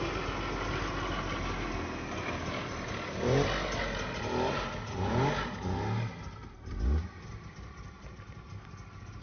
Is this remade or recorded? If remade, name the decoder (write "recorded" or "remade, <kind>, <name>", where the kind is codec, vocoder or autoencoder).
recorded